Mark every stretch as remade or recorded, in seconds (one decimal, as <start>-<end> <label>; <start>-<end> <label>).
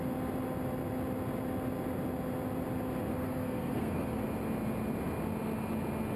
0.0-3.1 recorded; 3.1-4.2 remade; 4.2-6.2 recorded